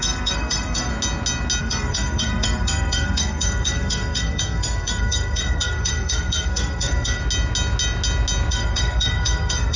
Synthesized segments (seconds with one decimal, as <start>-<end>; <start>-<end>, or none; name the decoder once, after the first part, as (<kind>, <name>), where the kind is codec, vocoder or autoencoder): 0.0-0.9 (codec, SNAC); 1.6-7.2; 8.5-9.8